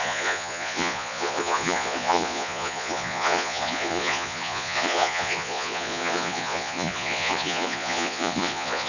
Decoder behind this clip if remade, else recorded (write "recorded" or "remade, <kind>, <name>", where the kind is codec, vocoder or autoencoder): remade, vocoder, Vocos